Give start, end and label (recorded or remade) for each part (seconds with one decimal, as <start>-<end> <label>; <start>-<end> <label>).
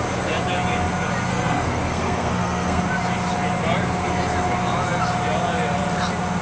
0.0-1.3 recorded; 1.3-2.8 remade; 2.8-6.4 recorded